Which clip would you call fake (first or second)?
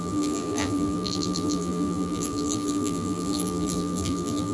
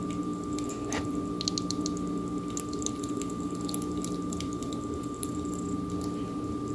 first